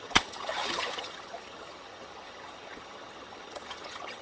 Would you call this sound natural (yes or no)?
no